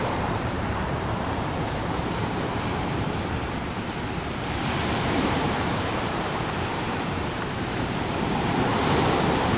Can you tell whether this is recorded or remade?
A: remade